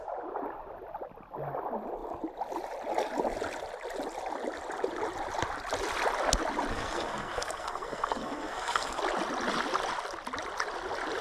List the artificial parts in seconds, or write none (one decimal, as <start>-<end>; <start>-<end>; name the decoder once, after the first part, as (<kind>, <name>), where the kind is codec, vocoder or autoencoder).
6.7-9.0 (codec, SNAC)